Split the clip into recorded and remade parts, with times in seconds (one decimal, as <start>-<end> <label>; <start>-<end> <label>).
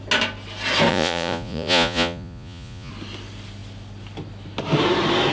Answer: 0.0-0.9 recorded; 0.9-2.9 remade; 2.9-5.3 recorded